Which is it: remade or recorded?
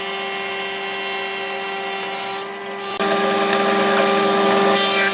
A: recorded